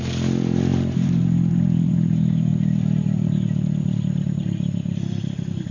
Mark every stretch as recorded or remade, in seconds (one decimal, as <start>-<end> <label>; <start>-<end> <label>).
0.0-2.5 remade; 2.5-5.1 recorded; 5.1-5.7 remade